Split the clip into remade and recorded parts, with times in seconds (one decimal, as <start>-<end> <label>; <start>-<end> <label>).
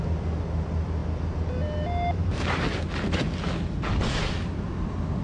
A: 0.0-5.2 recorded